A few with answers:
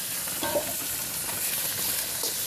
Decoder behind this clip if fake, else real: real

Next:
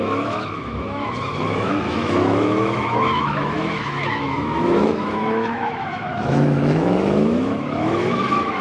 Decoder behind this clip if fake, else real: fake, autoencoder, DAC-VAE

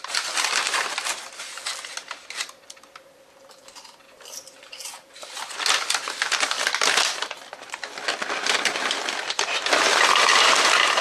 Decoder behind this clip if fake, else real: real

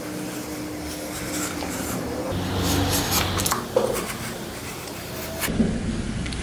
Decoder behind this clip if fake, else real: real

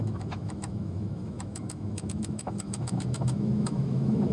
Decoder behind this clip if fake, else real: fake, autoencoder, DAC-VAE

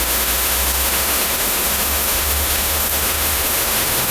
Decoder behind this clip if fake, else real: fake, autoencoder, DAC-VAE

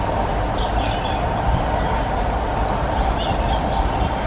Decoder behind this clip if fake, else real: real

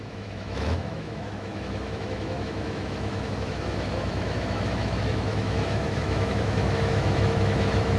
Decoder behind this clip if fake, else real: fake, autoencoder, DAC-VAE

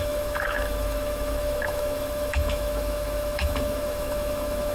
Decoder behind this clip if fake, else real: fake, autoencoder, DAC-VAE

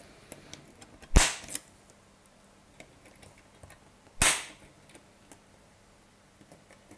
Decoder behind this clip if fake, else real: real